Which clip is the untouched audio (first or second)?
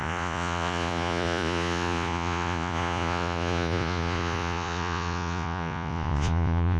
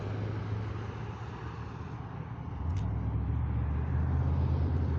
second